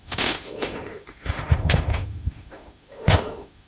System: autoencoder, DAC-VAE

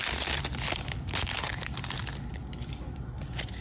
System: none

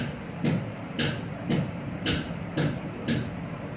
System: none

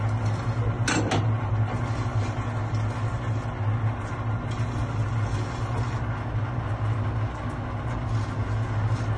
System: none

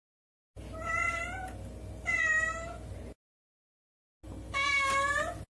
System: none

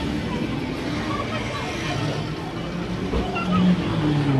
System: none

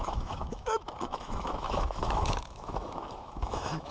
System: autoencoder, DAC-VAE